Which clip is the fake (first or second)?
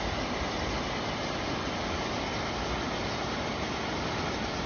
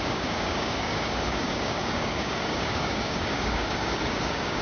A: second